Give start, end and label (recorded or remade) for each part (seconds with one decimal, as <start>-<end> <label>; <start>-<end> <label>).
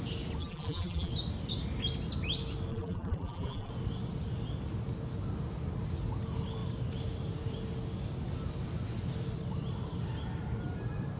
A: 0.0-0.4 recorded; 0.4-1.1 remade; 1.1-2.7 recorded; 2.7-3.7 remade; 3.7-11.2 recorded